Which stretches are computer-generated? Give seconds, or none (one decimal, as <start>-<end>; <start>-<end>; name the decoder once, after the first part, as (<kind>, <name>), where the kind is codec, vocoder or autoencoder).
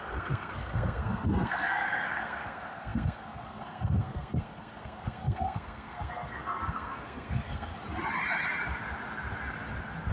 0.0-7.7 (codec, SNAC)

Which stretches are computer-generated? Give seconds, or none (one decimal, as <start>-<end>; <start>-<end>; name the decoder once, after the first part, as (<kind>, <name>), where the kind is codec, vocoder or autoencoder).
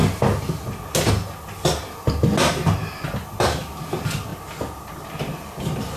none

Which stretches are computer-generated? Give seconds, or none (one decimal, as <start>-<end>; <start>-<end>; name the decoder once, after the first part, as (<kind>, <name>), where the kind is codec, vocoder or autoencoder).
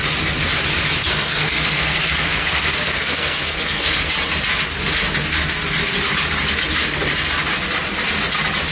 1.0-4.1 (codec, SNAC)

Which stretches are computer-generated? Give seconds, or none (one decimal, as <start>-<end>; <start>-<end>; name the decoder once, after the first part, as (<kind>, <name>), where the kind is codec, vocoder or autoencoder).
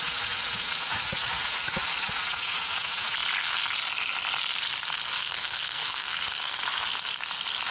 5.1-6.6 (codec, SNAC)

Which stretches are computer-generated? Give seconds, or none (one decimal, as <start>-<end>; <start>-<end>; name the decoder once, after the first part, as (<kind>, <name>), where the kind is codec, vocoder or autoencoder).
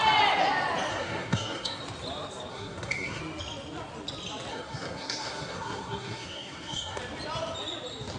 0.9-1.8 (codec, SNAC); 2.5-3.2; 4.5-7.0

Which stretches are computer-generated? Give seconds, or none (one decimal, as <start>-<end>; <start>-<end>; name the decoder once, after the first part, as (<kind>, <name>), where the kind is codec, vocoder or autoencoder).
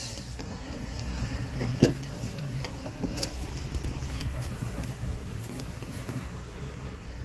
0.0-3.5 (codec, SNAC); 4.1-7.2